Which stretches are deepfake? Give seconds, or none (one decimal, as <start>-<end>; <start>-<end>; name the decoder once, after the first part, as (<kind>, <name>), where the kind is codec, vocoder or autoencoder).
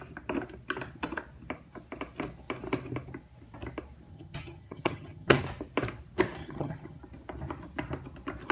4.1-5.4 (vocoder, HiFi-GAN); 6.4-7.0